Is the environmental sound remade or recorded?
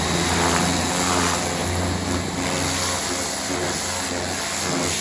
recorded